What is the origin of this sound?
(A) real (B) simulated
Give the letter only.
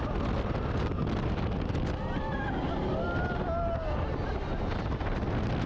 A